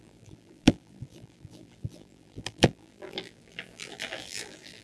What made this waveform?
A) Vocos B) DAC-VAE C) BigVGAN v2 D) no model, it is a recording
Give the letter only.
C